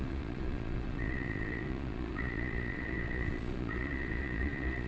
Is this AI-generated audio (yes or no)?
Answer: yes